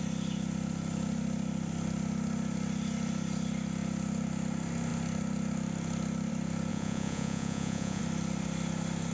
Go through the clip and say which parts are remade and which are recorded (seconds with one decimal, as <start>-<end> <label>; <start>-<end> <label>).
0.0-6.7 recorded; 6.7-8.0 remade; 8.0-9.1 recorded